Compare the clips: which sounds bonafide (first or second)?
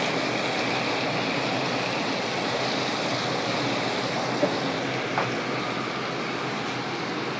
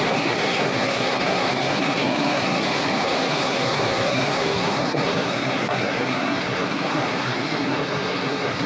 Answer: first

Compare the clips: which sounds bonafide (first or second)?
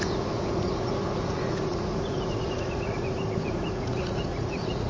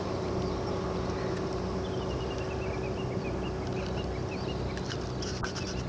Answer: second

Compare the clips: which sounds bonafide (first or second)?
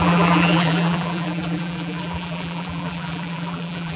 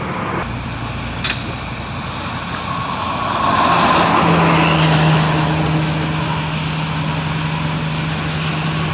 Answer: second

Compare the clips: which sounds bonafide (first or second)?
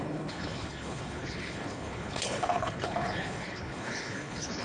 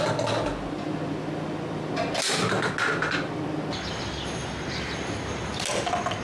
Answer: second